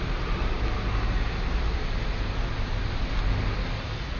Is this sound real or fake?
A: real